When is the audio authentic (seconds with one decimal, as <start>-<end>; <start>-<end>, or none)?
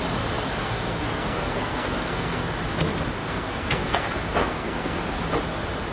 0.0-0.6; 2.5-3.2; 5.0-5.9